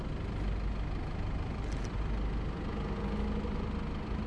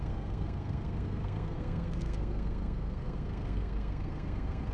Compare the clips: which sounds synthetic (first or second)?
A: second